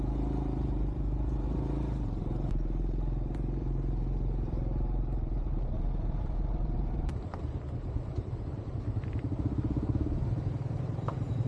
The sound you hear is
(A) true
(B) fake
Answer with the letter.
B